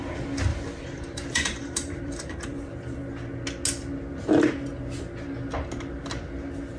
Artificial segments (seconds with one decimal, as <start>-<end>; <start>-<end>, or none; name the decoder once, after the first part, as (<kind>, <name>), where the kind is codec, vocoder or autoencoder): 0.5-3.0 (vocoder, BigVGAN v2)